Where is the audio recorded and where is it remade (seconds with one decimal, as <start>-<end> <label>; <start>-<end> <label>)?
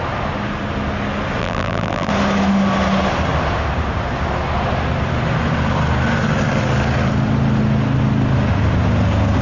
0.0-1.4 recorded; 1.4-2.1 remade; 2.1-9.4 recorded